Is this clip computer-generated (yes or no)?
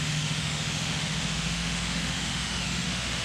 yes